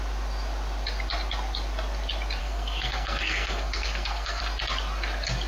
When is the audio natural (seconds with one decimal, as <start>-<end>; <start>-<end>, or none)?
0.0-2.4; 4.4-5.5